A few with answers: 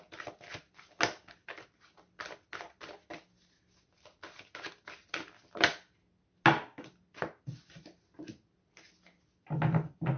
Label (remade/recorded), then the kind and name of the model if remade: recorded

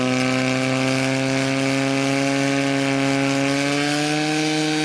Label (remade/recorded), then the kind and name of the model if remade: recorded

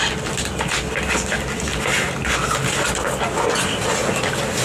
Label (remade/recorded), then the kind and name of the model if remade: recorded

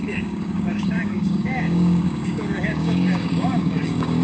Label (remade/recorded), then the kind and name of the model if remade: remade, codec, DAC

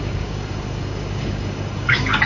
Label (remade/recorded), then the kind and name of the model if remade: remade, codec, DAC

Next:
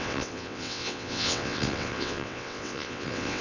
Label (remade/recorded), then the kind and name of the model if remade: remade, vocoder, WaveNeXt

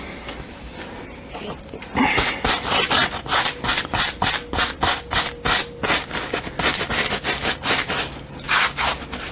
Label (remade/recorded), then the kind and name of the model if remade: recorded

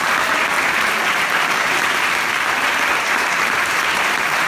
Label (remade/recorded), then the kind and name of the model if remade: remade, vocoder, BigVGAN v2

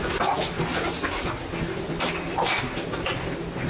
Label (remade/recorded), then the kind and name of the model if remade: recorded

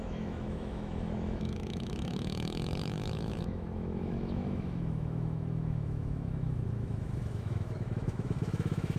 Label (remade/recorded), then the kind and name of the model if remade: remade, autoencoder, DAC-VAE